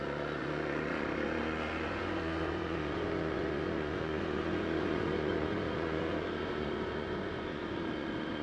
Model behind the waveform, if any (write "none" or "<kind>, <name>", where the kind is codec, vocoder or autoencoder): vocoder, Vocos